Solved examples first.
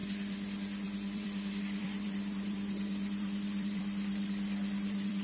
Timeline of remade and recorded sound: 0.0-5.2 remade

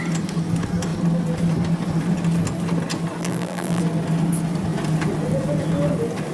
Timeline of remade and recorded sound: 0.0-3.2 recorded; 3.2-3.8 remade; 3.8-6.3 recorded

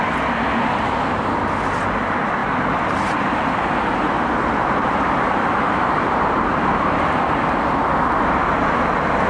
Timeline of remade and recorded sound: 0.0-2.4 recorded; 2.4-7.2 remade; 7.2-9.3 recorded

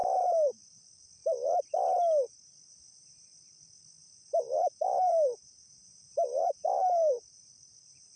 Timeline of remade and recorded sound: 0.0-1.1 remade; 1.1-4.0 recorded; 4.0-8.2 remade